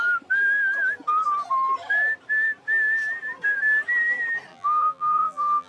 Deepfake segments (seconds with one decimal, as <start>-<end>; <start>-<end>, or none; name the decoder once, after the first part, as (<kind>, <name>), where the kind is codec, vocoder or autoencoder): 4.5-5.7 (vocoder, BigVGAN v2)